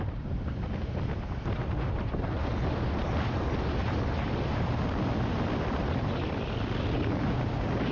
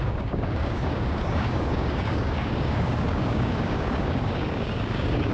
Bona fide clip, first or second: first